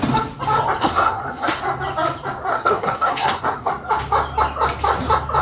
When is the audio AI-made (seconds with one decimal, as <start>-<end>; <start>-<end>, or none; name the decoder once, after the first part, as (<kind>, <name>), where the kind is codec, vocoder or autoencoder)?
0.8-1.6 (codec, SNAC); 2.5-3.7